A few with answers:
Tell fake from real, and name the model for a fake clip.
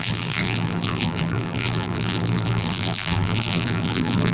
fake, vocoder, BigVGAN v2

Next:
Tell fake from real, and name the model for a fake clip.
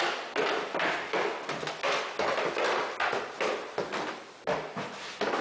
real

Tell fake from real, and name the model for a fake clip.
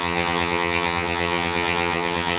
fake, vocoder, HiFi-GAN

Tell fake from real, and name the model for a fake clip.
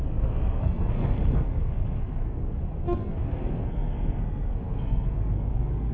fake, codec, SNAC